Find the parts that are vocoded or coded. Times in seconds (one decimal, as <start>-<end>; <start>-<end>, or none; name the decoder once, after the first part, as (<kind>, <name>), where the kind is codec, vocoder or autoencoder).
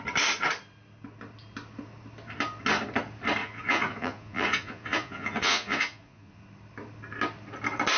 3.4-6.4 (vocoder, Vocos)